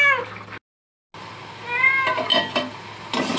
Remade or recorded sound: recorded